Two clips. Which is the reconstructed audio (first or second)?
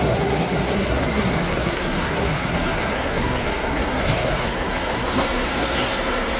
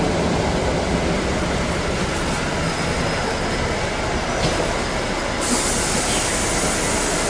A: first